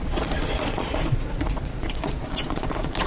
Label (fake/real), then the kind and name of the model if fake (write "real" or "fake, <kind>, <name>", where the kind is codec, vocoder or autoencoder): fake, vocoder, Vocos